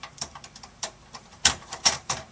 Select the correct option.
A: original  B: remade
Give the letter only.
B